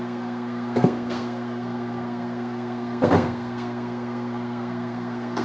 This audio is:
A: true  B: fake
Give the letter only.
B